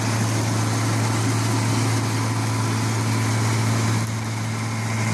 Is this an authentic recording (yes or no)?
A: yes